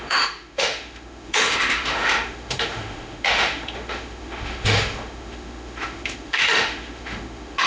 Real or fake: fake